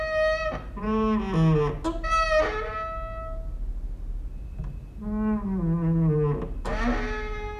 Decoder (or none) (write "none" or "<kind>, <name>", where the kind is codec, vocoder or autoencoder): none